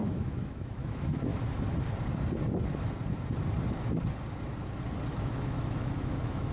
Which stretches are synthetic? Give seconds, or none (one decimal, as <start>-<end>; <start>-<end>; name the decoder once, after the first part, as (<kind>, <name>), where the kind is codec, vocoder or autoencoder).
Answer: 0.0-1.3 (autoencoder, DAC-VAE); 5.2-6.5

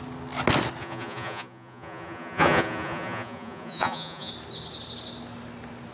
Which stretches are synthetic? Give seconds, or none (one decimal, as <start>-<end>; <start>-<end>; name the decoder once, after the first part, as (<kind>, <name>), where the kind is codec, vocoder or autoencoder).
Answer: 0.8-4.3 (vocoder, Vocos)

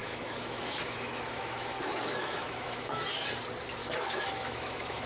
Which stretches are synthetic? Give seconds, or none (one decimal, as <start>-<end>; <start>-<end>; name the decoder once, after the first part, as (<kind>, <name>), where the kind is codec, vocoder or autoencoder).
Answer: 0.0-3.1 (autoencoder, DAC-VAE); 3.8-5.1

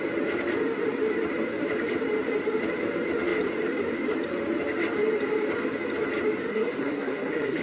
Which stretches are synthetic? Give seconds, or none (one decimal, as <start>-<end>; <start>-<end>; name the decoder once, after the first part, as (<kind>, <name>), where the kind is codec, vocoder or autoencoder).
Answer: 6.5-7.6 (codec, SNAC)

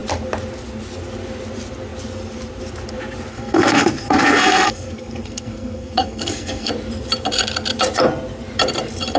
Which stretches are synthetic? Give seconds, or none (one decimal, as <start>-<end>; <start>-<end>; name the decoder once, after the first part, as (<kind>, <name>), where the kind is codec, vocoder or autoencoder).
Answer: 3.3-6.7 (codec, SNAC)

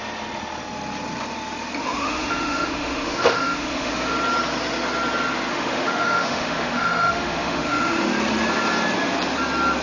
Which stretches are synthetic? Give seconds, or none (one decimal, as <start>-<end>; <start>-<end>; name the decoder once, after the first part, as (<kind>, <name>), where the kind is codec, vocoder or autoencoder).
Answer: 1.8-3.9 (autoencoder, DAC-VAE); 5.5-8.1

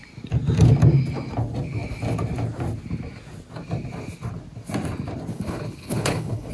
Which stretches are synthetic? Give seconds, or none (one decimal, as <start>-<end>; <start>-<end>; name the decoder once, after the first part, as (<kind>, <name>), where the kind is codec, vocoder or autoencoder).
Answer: 5.3-6.5 (codec, HILCodec)